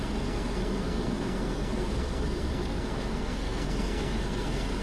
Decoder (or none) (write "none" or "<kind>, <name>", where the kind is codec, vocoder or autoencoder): codec, SNAC